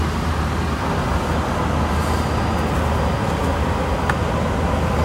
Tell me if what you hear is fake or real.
real